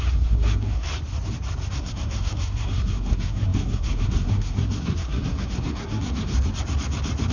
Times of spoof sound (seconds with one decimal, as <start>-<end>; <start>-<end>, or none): 0.0-0.9; 1.7-6.3